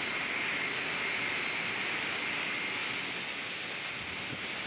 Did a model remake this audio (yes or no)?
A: no